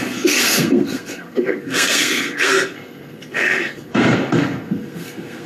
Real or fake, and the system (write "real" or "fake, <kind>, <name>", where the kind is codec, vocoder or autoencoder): fake, codec, SNAC